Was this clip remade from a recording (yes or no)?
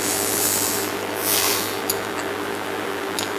yes